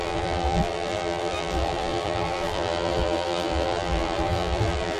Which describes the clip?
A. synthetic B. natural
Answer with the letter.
A